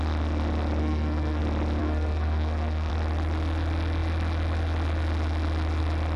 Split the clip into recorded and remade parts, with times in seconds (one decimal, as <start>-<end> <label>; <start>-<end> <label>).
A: 0.0-0.8 recorded; 0.8-1.4 remade; 1.4-1.8 recorded; 1.8-2.9 remade; 2.9-6.2 recorded